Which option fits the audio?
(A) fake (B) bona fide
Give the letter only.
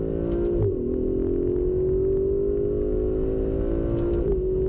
B